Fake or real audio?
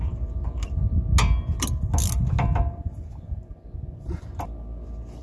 real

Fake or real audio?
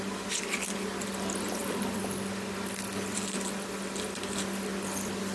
real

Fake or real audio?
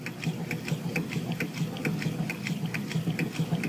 real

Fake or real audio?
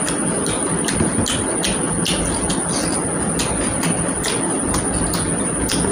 real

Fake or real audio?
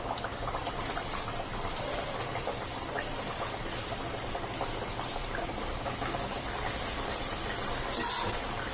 real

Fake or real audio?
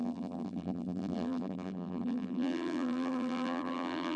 fake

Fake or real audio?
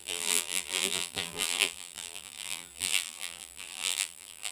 fake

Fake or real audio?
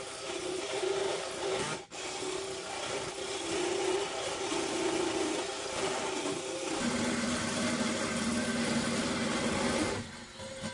real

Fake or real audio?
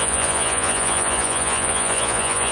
fake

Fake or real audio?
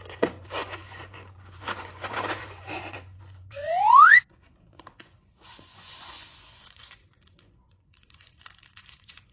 fake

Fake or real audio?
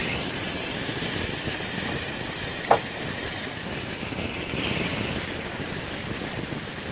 real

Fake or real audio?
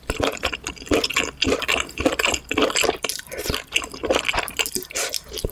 real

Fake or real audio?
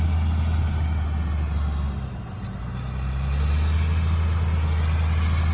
real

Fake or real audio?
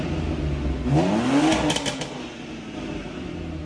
real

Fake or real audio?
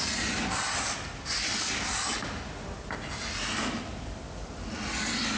real